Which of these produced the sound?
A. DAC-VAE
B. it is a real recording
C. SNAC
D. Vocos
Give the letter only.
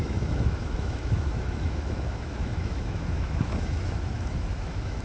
A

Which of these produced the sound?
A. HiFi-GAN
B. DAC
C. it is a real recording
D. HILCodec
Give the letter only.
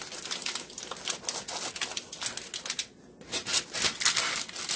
C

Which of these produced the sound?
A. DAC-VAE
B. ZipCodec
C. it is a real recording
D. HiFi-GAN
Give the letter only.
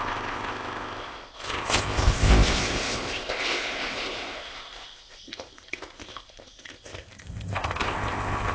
B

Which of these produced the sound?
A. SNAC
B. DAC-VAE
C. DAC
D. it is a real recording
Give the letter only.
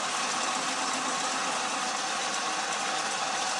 D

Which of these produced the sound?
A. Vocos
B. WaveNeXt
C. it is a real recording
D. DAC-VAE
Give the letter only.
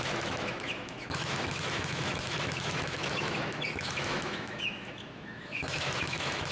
D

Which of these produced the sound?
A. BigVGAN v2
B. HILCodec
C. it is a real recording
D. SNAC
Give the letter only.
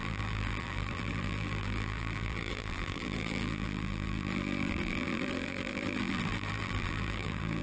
A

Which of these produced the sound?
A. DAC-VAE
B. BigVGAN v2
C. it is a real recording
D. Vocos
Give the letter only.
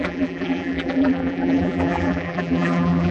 B